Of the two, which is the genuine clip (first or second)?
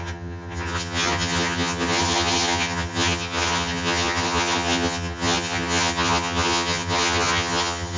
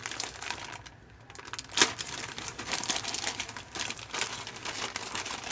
second